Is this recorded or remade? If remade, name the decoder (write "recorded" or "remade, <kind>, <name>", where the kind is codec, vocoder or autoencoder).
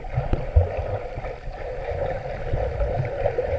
recorded